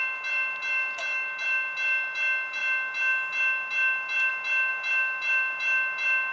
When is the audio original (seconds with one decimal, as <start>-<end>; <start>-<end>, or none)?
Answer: 0.0-6.3